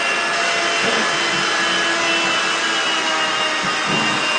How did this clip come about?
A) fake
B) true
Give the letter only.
B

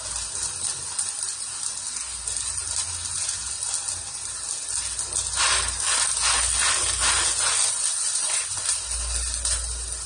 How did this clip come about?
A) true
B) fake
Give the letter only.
A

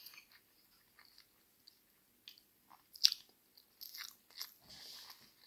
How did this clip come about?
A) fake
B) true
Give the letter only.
B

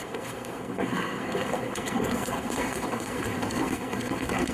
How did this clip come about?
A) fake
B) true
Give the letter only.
A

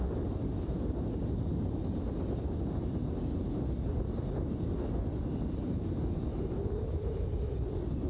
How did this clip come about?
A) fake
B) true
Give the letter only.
B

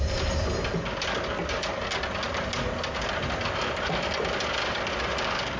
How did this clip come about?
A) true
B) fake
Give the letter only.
A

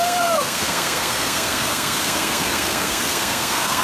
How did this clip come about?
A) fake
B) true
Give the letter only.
A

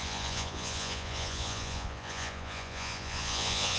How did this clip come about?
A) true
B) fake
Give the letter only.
B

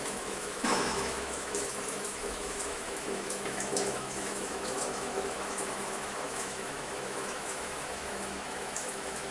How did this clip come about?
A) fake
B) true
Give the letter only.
A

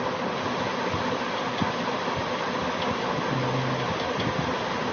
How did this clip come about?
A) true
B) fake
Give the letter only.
A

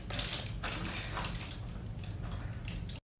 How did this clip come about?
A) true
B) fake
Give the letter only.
A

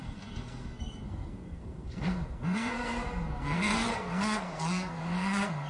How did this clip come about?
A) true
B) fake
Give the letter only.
B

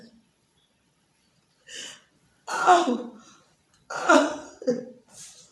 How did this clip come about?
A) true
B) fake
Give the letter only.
B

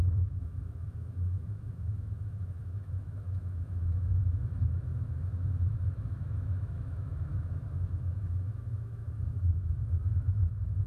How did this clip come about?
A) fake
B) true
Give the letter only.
A